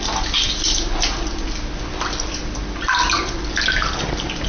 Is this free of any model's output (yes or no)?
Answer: yes